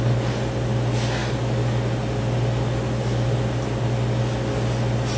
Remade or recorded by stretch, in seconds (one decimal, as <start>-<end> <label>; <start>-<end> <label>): 0.0-5.2 recorded